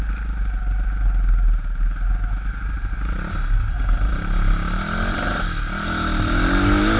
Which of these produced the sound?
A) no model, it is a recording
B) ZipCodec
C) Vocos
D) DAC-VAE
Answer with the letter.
A